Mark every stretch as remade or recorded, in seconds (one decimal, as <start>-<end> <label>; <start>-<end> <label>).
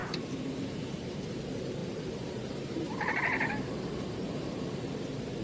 0.0-1.4 remade; 1.4-1.8 recorded; 1.8-5.0 remade; 5.0-5.4 recorded